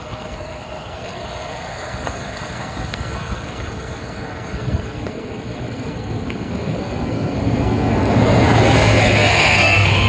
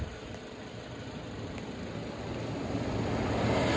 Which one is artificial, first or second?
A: first